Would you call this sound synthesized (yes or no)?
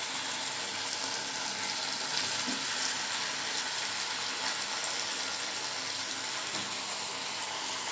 no